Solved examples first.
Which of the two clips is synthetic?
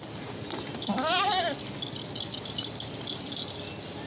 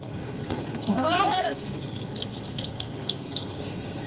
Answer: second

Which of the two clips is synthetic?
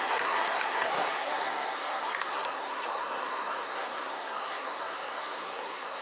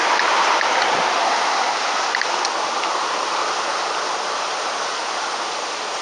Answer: first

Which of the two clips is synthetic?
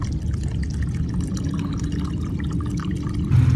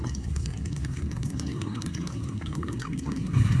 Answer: second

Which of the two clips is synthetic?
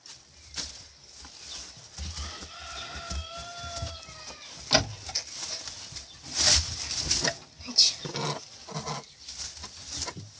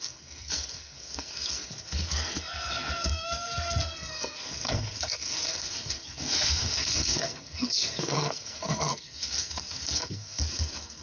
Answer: second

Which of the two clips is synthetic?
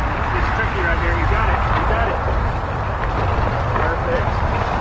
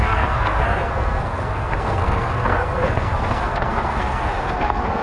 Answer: second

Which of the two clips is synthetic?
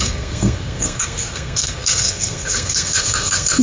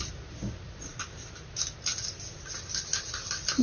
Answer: first